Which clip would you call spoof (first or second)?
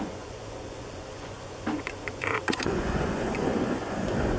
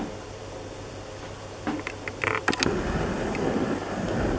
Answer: first